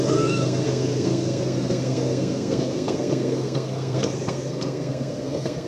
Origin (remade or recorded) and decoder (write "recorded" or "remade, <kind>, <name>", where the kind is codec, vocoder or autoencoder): remade, codec, SNAC